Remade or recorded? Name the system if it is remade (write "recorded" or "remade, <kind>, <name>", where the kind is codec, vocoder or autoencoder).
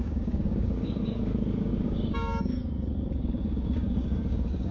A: remade, codec, DAC